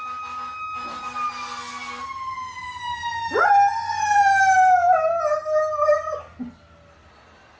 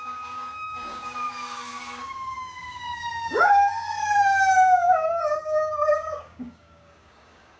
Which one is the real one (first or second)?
first